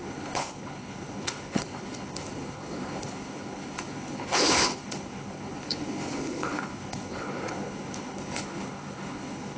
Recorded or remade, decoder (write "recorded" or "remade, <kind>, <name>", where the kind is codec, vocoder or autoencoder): remade, codec, HILCodec